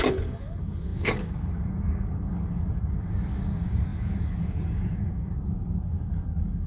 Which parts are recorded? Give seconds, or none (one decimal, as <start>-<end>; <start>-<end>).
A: none